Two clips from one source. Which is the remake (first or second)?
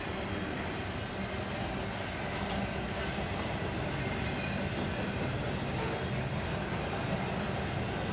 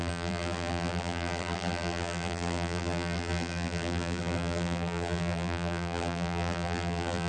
second